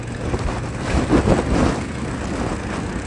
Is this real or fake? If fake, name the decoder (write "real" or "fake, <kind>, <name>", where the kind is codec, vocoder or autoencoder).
real